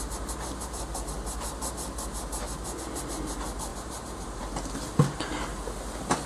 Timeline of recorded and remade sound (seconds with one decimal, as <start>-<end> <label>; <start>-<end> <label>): 0.0-3.7 recorded; 3.7-4.4 remade; 4.4-6.3 recorded